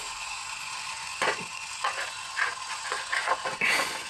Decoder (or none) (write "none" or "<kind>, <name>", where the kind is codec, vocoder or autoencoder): vocoder, Vocos